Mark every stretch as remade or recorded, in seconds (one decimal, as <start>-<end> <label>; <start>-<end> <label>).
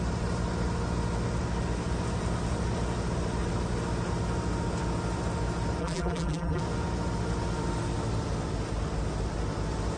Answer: 0.0-5.8 recorded; 5.8-6.6 remade; 6.6-10.0 recorded